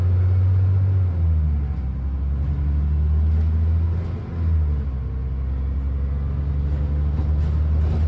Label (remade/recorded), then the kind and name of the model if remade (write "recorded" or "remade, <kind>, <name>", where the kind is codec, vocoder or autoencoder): recorded